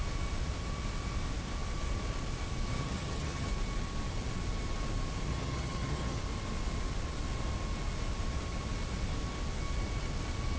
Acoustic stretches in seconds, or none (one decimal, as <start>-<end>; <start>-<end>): 0.0-2.7; 3.5-5.3; 6.2-10.6